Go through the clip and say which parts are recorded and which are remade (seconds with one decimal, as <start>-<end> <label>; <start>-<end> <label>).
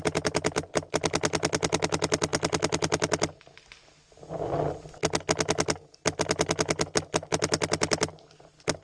0.0-8.8 recorded